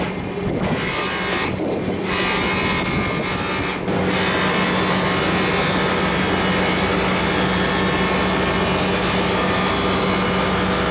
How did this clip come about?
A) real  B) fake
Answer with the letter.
A